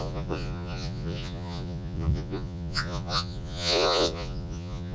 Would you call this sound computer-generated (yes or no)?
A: yes